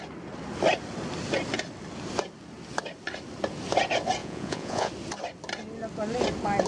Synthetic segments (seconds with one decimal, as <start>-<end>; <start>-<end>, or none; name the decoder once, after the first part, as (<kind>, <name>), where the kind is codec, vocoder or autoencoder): 4.2-4.9 (vocoder, Vocos)